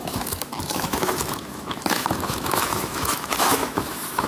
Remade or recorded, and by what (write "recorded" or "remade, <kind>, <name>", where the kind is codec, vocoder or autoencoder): remade, autoencoder, DAC-VAE